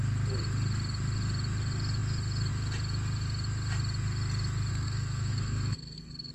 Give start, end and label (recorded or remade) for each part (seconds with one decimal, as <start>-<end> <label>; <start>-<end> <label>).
0.0-4.7 recorded; 4.7-6.3 remade